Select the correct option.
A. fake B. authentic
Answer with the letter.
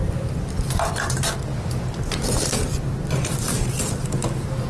B